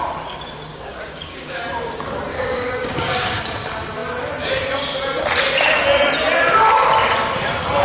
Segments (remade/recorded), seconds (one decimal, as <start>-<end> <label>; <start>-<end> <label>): 0.0-0.7 recorded; 0.7-1.6 remade; 1.6-2.3 recorded; 2.3-3.4 remade; 3.4-7.8 recorded